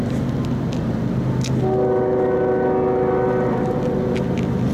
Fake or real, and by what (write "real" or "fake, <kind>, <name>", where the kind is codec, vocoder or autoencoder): real